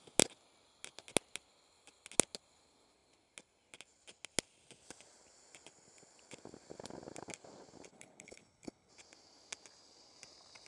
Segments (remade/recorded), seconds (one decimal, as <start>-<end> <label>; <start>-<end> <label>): 0.0-7.9 recorded; 7.9-8.9 remade; 8.9-10.7 recorded